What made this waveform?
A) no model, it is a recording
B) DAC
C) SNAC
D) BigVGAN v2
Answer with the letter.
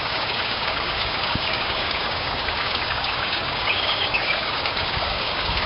B